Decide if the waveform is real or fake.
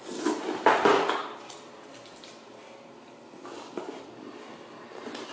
real